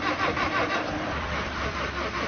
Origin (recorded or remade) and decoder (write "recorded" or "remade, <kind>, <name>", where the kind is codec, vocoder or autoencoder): remade, vocoder, BigVGAN v2